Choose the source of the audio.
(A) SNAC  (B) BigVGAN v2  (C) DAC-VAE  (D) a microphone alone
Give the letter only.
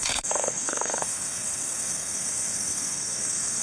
A